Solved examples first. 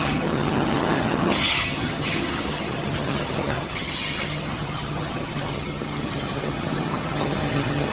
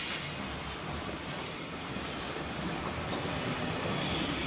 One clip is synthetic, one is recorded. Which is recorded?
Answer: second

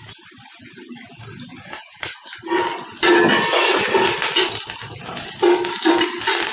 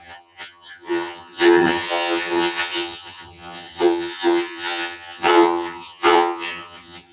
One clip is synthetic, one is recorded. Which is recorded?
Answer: first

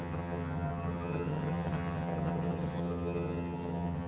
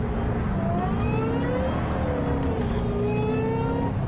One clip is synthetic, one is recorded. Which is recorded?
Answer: second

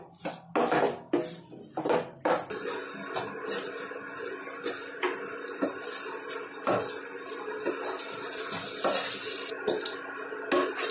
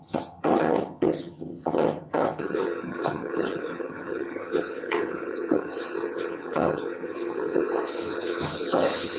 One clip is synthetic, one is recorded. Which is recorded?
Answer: first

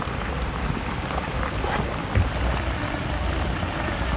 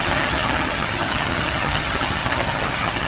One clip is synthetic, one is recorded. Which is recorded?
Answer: first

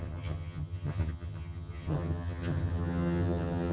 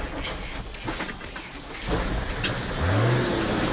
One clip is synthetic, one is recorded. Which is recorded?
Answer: second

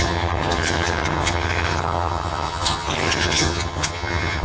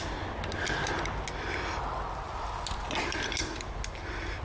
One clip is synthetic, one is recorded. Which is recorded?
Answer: second